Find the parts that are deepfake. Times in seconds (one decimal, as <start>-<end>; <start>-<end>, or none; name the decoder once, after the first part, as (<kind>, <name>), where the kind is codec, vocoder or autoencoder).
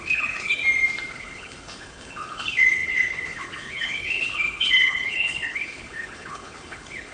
0.0-0.6 (codec, HILCodec); 1.1-7.1